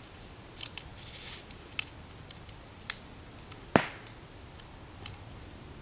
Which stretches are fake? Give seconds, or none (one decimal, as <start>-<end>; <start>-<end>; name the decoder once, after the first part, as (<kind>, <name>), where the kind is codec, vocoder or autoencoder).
none